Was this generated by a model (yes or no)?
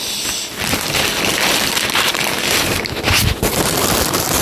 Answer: no